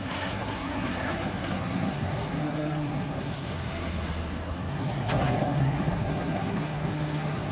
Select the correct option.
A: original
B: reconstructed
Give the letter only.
B